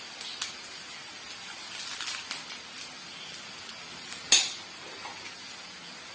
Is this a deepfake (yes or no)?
no